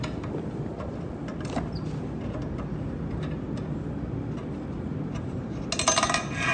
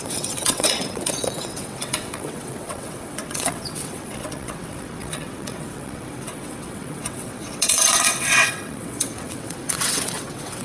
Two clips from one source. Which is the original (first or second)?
first